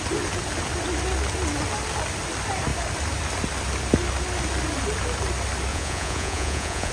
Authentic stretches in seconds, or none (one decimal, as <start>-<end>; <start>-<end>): 0.0-5.7